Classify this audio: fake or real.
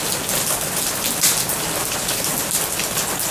real